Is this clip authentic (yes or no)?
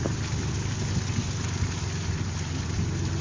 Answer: yes